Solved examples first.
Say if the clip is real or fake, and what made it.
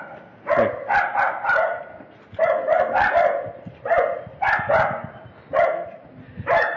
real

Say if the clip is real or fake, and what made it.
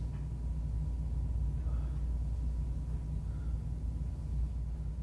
real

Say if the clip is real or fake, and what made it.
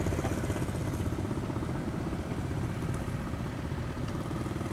real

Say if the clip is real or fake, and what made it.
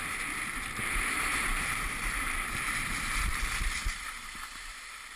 fake, vocoder, BigVGAN v2